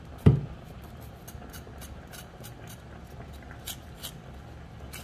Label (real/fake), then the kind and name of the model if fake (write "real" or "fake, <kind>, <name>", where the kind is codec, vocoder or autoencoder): real